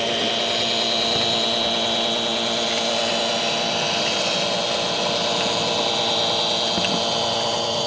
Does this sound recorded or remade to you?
recorded